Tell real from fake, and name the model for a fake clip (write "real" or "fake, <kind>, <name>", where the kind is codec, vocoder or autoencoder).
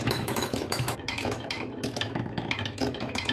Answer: fake, autoencoder, DAC-VAE